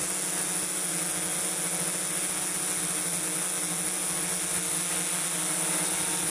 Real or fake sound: real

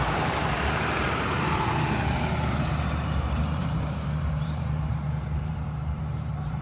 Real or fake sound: fake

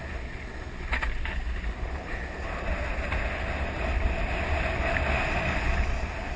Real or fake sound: real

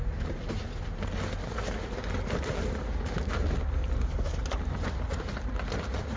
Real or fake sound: real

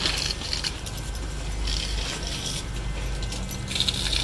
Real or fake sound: real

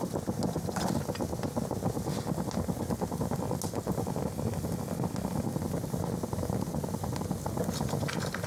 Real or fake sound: real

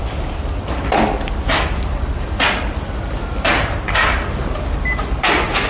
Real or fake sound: real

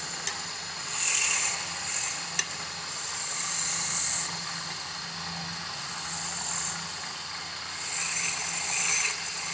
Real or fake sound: real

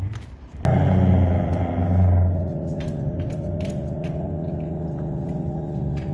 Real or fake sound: real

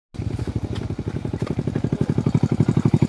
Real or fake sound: real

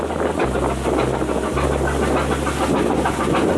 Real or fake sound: real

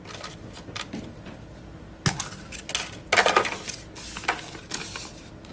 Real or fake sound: real